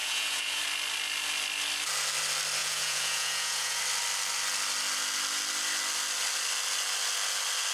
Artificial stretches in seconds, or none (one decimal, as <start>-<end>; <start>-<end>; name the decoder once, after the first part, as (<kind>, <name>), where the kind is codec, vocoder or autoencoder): 0.0-0.6 (vocoder, Vocos); 2.6-3.8